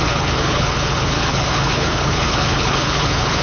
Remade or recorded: remade